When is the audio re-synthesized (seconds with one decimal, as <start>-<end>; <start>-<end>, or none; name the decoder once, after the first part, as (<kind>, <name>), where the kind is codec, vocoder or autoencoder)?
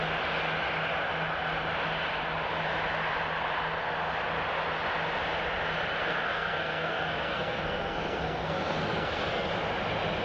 6.0-9.5 (codec, SNAC)